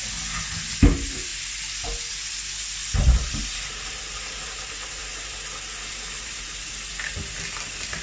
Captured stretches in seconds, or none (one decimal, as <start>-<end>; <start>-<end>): 0.0-8.0